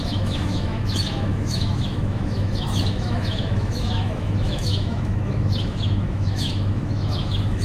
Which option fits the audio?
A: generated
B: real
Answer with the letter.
A